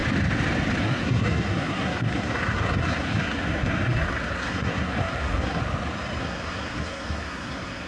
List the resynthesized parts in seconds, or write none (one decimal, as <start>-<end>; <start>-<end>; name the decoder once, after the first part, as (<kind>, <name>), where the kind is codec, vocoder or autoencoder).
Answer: 0.8-5.6 (codec, SNAC); 6.2-7.9